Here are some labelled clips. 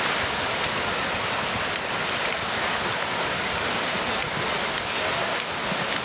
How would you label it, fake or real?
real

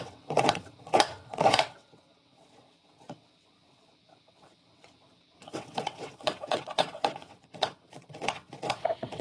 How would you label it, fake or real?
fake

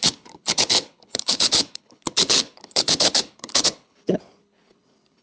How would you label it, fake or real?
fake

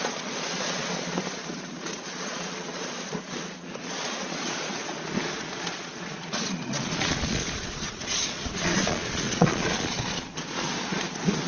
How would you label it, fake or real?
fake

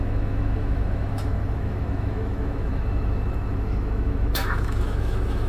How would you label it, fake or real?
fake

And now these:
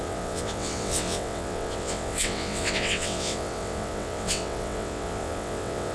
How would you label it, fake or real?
fake